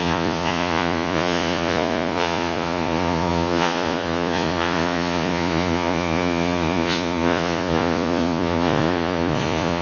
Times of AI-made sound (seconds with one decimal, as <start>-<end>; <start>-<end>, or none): 0.0-9.8